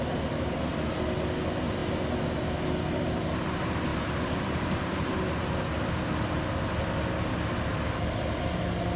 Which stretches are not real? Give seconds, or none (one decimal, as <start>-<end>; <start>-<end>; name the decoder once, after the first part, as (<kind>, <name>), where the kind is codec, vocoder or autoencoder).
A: 3.9-5.2 (vocoder, BigVGAN v2)